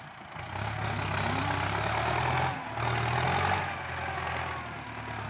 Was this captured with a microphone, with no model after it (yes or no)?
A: yes